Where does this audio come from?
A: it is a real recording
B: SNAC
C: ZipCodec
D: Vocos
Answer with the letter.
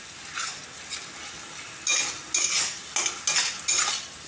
A